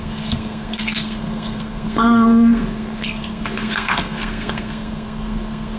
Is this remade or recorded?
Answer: remade